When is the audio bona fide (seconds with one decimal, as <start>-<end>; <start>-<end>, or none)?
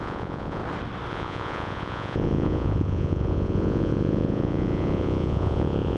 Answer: 0.6-1.1